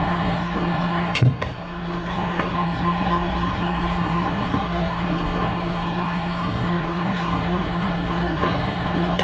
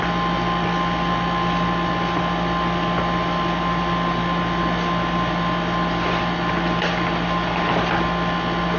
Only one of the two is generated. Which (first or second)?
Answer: first